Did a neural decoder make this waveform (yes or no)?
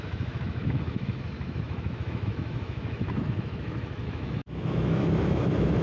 yes